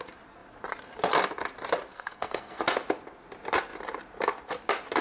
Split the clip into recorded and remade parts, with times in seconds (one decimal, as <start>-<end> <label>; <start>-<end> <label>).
0.0-1.9 recorded; 1.9-2.6 remade; 2.6-5.0 recorded